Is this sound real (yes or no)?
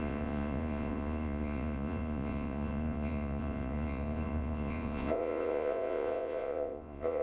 no